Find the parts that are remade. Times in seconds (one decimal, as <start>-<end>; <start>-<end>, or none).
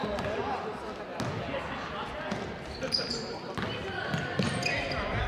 none